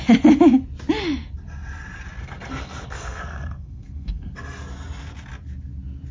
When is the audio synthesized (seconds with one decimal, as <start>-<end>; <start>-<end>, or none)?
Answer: 2.2-4.3